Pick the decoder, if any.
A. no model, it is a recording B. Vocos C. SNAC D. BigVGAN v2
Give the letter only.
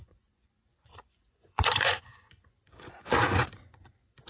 B